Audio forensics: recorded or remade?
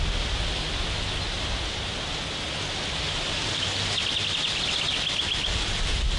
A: recorded